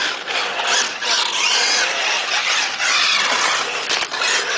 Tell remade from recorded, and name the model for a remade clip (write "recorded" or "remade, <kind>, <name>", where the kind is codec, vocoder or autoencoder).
recorded